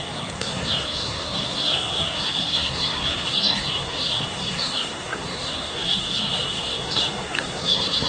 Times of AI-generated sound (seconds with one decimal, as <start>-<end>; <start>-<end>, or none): 0.0-8.1